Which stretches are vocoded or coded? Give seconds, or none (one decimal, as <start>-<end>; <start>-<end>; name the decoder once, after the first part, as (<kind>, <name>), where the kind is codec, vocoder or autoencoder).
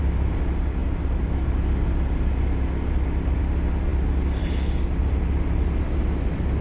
none